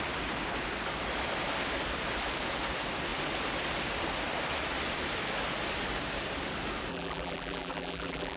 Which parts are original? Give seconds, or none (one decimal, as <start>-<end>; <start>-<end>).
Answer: 0.0-6.9